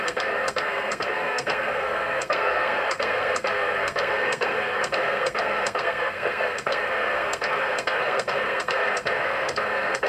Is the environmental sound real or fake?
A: fake